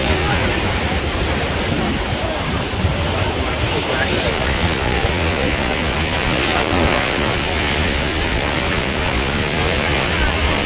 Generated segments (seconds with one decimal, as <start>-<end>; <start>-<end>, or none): 0.0-0.4; 4.3-10.7